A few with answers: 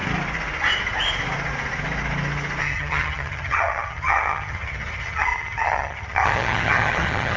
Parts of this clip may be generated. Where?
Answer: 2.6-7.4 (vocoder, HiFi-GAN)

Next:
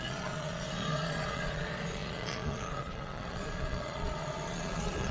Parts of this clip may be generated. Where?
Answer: 0.0-5.1 (vocoder, Vocos)

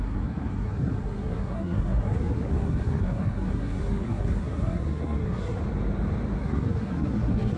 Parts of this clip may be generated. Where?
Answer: 0.0-5.6 (codec, SNAC); 6.4-7.6